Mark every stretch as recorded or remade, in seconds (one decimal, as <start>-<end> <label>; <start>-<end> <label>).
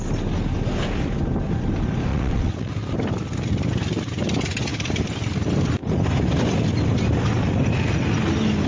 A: 0.0-2.1 recorded; 2.1-2.7 remade; 2.7-8.7 recorded